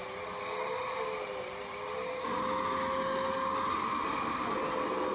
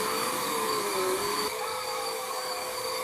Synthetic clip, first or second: second